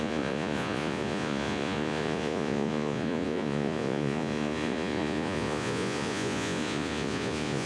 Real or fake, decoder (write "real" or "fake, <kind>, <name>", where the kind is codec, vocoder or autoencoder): fake, vocoder, Vocos